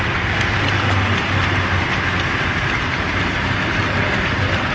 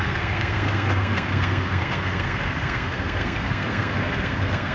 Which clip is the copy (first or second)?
second